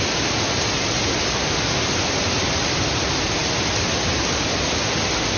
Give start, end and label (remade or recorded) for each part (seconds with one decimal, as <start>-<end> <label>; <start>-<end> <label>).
0.0-5.4 recorded

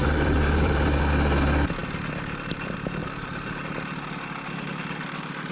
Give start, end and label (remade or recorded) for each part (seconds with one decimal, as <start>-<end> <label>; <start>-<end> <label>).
0.0-1.0 remade; 1.0-3.0 recorded; 3.0-3.6 remade; 3.6-5.5 recorded